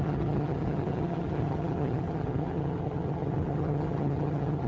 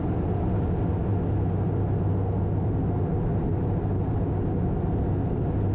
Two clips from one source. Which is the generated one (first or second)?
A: first